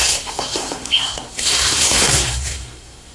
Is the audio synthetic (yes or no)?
yes